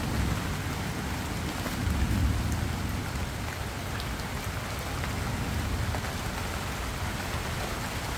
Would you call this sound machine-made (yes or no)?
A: no